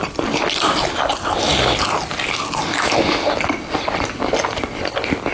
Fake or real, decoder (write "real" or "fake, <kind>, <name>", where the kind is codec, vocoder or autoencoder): real